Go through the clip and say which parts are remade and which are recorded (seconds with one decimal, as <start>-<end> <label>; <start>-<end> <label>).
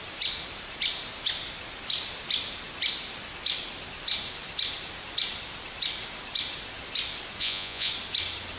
0.0-7.4 recorded; 7.4-7.9 remade; 7.9-8.6 recorded